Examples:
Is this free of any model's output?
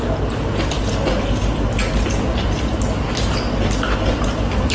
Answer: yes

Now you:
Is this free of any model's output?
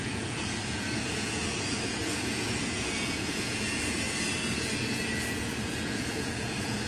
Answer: no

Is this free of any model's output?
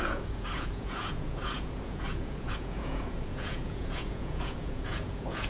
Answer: no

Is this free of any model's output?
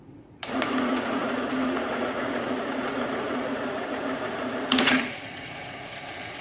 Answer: no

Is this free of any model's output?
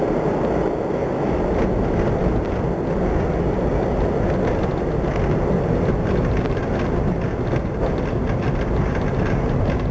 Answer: yes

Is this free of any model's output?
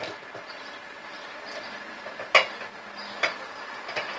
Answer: yes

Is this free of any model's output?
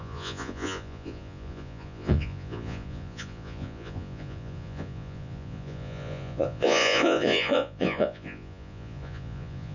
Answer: no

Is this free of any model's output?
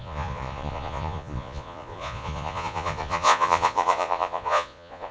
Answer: no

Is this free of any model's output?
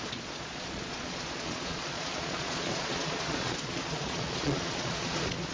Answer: no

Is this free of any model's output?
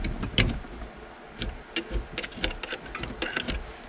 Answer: yes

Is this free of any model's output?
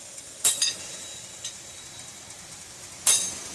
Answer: yes